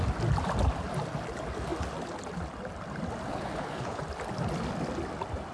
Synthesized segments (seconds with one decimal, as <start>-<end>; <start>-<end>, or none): 3.3-4.0